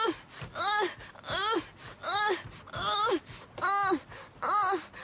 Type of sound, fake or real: real